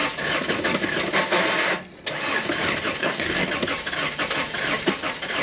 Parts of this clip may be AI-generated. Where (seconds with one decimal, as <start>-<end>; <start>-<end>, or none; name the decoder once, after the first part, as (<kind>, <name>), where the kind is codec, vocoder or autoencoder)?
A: 3.0-3.5 (codec, DAC)